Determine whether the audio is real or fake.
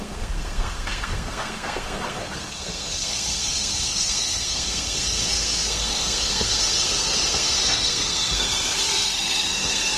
fake